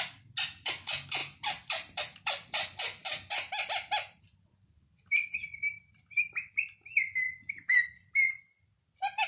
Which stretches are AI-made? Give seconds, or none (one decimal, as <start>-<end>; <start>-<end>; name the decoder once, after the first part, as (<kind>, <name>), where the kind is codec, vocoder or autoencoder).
none